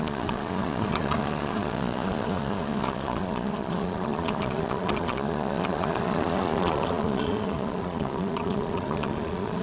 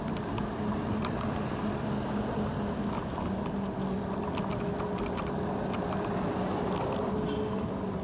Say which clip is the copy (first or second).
first